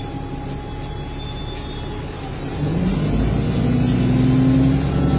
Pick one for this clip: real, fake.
real